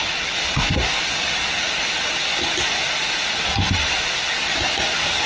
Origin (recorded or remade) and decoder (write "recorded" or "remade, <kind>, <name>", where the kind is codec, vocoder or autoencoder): recorded